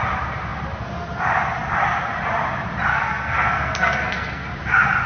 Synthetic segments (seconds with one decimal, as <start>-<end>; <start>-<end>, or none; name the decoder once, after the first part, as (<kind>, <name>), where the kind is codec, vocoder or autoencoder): 2.9-4.5 (codec, SNAC)